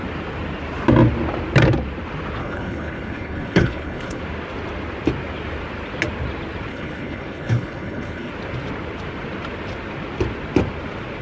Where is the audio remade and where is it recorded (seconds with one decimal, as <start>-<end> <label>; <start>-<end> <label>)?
0.0-2.4 recorded; 2.4-4.2 remade; 4.2-6.7 recorded; 6.7-8.3 remade; 8.3-11.2 recorded